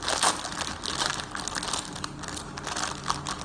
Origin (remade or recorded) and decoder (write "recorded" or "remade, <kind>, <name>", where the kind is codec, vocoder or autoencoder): recorded